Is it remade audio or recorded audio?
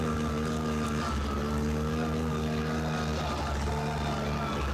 recorded